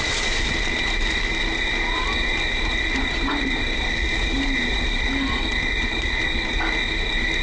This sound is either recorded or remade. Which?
recorded